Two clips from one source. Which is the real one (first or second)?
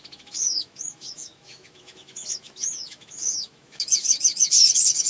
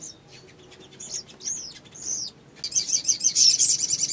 second